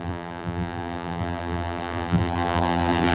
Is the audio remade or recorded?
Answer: remade